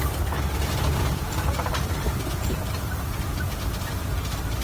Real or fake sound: fake